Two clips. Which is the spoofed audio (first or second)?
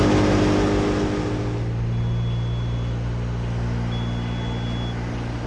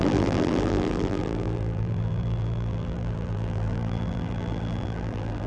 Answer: second